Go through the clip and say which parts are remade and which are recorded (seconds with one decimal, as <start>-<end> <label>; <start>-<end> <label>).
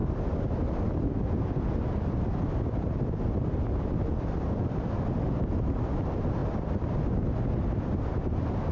0.0-8.7 recorded